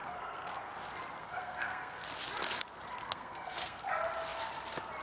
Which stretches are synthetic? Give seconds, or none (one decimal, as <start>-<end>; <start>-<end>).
0.0-0.7; 1.2-2.1; 3.0-3.9